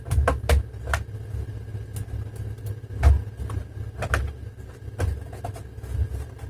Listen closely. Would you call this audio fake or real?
real